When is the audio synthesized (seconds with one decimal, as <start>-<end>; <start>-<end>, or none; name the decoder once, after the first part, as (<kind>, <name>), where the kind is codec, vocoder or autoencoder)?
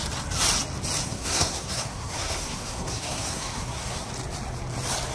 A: 1.0-4.1 (codec, SNAC)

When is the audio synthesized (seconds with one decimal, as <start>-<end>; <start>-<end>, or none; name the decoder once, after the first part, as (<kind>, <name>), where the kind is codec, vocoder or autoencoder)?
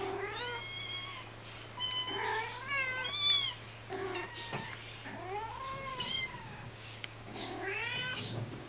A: 5.9-8.7 (codec, DAC)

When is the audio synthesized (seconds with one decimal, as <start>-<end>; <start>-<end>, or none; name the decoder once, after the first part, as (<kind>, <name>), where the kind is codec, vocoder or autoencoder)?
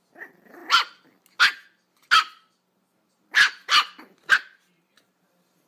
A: none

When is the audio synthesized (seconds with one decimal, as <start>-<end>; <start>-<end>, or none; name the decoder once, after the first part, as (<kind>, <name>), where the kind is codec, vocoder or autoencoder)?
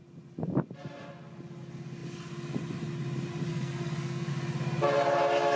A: 3.5-4.3 (codec, SNAC)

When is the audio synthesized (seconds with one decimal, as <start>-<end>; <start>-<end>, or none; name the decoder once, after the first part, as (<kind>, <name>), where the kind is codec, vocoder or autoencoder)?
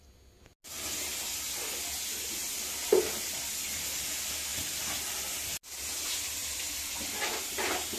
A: 2.4-3.0 (vocoder, BigVGAN v2); 6.4-6.9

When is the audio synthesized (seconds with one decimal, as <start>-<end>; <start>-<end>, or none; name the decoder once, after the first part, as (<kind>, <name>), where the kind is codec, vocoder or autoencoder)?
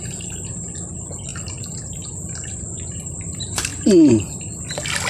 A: 0.0-1.3 (vocoder, BigVGAN v2); 2.6-3.7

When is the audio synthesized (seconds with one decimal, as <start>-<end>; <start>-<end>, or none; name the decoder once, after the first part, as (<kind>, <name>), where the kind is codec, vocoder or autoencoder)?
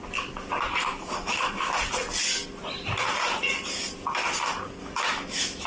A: 0.9-1.7 (autoencoder, DAC-VAE); 4.8-5.7